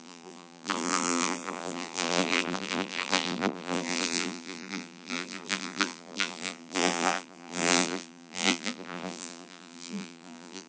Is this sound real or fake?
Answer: fake